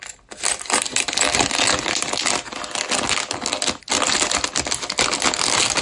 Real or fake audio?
real